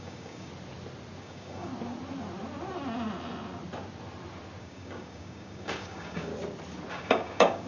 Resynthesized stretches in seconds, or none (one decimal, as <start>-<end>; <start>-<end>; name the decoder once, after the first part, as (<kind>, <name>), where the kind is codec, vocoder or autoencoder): 0.0-0.5 (codec, DAC); 1.2-1.7; 4.6-6.3; 6.9-7.7